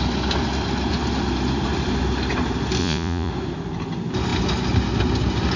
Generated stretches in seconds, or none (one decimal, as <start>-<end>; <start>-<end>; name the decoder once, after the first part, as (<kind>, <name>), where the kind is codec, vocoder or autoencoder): 2.8-3.3 (vocoder, Vocos)